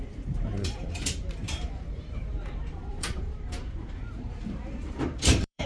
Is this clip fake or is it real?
fake